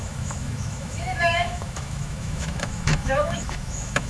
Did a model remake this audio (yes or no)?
yes